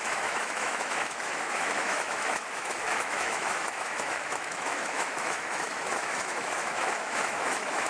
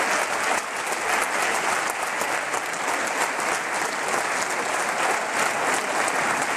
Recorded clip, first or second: second